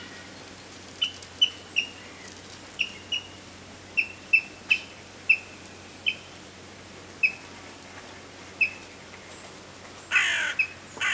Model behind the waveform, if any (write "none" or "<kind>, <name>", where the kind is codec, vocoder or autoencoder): none